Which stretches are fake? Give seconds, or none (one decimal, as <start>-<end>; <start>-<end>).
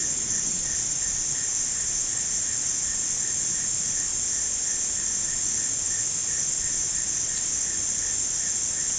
0.0-4.1; 5.2-9.0